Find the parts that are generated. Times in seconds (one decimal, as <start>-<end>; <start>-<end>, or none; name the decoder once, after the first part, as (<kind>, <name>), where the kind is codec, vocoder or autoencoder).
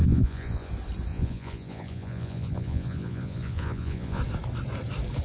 0.0-0.7 (vocoder, Vocos); 1.1-4.2